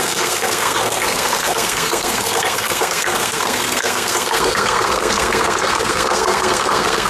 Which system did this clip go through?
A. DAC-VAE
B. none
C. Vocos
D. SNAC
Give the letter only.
D